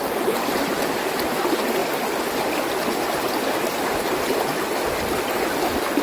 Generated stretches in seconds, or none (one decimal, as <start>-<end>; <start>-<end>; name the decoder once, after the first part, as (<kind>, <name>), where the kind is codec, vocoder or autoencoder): none